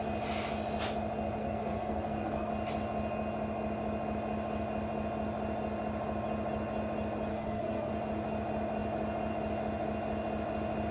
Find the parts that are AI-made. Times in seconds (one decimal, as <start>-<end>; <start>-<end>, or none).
1.4-2.5; 7.3-7.9